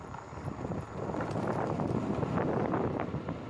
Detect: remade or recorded recorded